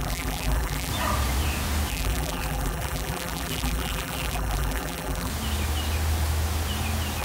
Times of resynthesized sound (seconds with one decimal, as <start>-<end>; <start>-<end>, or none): 0.0-0.9; 1.9-5.3